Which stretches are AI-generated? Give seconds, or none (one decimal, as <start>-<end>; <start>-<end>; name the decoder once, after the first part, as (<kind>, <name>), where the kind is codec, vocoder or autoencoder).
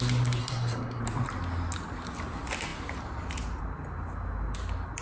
0.4-1.0 (codec, SNAC)